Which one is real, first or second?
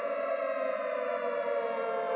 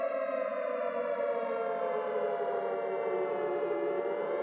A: first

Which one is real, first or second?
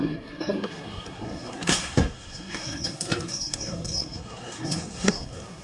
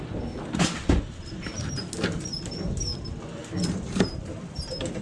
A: second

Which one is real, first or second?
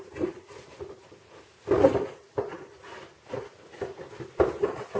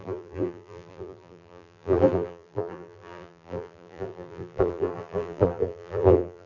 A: first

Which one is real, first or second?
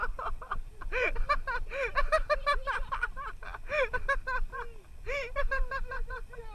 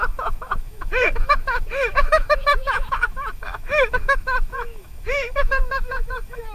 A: first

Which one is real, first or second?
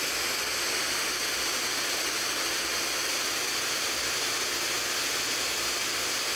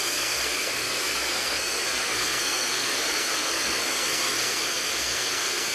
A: first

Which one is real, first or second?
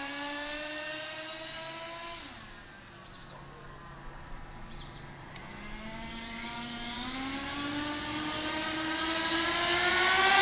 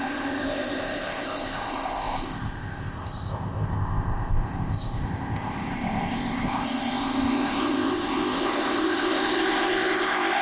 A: first